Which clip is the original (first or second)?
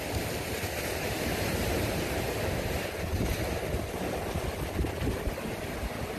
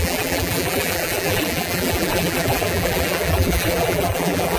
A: first